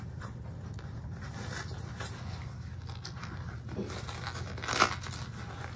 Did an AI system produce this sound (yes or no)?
no